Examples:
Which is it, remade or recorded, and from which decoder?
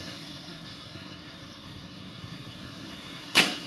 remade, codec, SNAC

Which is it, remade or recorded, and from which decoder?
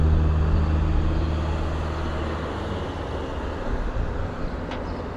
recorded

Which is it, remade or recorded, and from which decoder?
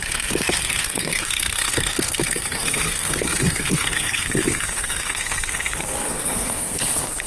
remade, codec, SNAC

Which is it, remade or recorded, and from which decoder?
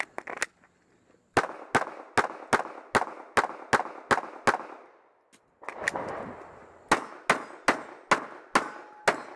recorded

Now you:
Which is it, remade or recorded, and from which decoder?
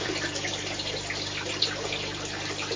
recorded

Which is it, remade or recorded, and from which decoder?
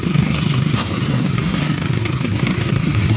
remade, codec, SNAC